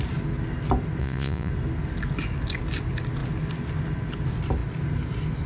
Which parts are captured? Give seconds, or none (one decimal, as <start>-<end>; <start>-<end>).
0.0-1.0; 1.5-5.5